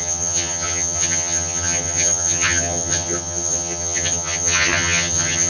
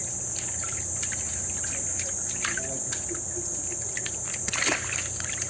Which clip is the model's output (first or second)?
first